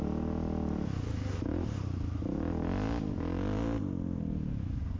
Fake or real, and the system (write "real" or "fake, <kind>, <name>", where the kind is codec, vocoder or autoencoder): real